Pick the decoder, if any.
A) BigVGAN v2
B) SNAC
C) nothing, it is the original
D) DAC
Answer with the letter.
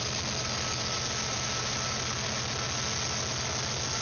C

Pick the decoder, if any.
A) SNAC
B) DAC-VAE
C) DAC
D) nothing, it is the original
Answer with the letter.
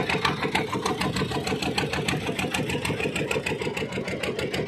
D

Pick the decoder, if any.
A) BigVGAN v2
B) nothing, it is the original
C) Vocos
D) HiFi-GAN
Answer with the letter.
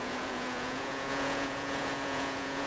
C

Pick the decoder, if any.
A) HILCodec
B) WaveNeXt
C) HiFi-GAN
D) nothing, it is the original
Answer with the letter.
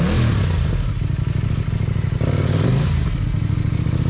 D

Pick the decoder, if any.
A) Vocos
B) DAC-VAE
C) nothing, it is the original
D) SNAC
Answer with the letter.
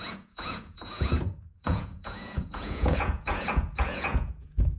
A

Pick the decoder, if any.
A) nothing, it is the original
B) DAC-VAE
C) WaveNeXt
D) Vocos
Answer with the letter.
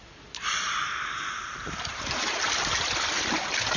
A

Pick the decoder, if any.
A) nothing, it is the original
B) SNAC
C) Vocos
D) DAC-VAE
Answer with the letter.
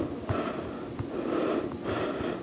A